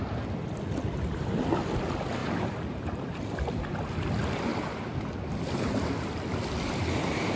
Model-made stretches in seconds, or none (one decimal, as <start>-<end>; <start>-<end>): 2.2-3.2